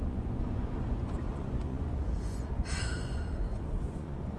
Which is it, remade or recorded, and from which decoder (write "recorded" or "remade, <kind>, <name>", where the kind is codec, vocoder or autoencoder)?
remade, vocoder, Vocos